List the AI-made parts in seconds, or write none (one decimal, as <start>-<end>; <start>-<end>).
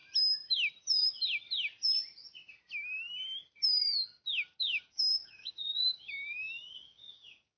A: 4.6-7.6